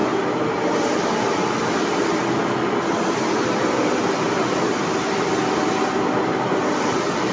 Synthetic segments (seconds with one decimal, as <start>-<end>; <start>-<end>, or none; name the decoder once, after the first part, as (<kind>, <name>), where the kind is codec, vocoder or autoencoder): none